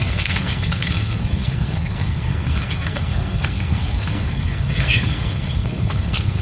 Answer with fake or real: fake